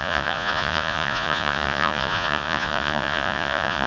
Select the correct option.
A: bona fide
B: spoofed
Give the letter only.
B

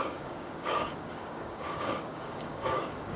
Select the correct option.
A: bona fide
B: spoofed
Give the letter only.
B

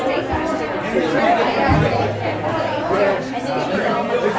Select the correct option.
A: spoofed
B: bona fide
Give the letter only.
B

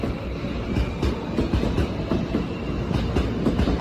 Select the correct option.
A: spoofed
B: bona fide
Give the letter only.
B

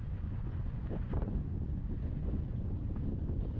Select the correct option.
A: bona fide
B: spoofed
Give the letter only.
B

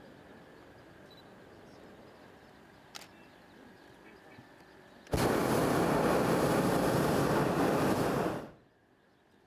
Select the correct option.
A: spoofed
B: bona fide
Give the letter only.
B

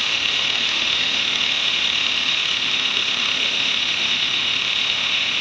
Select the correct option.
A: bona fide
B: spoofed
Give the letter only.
B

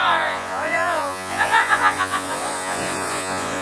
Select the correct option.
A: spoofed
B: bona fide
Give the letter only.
A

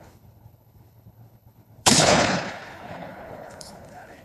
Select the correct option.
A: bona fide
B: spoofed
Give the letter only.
B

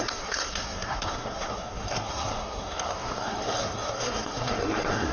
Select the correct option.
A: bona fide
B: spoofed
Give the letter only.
B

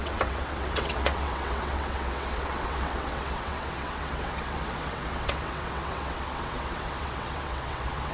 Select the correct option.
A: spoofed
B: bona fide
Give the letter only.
A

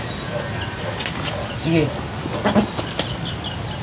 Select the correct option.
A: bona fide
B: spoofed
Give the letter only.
A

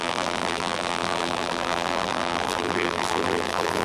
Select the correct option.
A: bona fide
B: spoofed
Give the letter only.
B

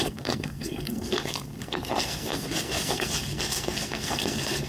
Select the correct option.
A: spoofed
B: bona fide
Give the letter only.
A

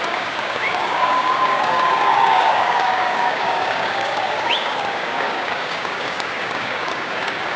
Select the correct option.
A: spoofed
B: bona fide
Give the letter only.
A